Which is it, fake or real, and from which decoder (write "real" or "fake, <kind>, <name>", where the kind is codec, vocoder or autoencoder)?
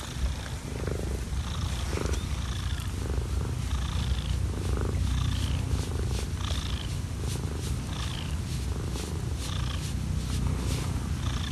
real